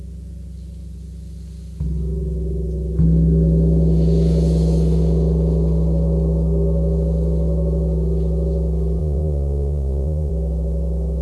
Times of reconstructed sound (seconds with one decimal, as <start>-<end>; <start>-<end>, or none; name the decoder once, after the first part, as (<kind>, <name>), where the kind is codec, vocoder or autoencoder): 9.0-10.3 (vocoder, Vocos)